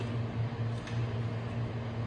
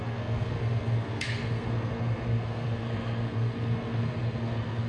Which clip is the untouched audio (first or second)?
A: first